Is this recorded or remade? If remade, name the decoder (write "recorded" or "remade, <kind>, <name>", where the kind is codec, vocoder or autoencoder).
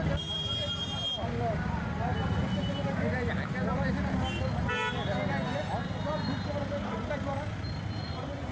recorded